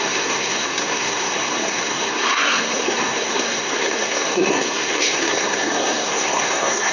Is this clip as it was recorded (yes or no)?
no